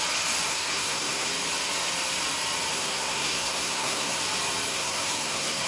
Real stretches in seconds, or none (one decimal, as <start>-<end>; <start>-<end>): 0.0-0.5; 1.3-2.7; 4.2-4.7